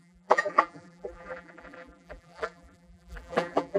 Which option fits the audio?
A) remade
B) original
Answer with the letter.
A